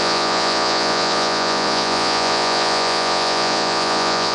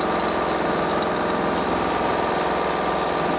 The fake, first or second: first